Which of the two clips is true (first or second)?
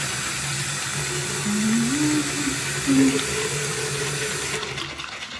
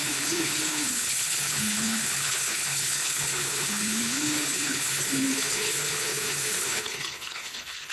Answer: first